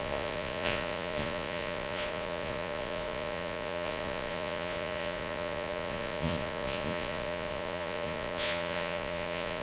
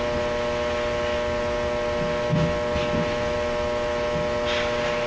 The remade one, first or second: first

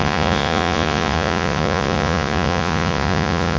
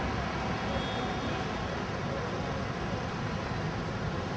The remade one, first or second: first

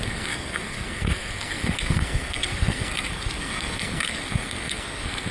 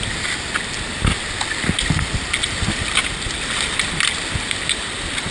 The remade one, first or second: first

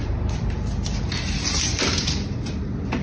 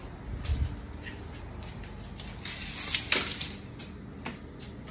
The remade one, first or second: first